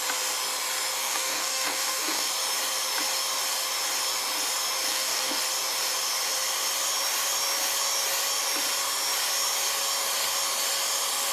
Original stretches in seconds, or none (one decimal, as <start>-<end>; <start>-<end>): 0.0-1.0; 2.3-4.9; 5.4-11.3